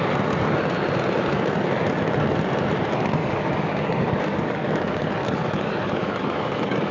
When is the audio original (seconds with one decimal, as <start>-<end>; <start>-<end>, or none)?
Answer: 0.0-3.2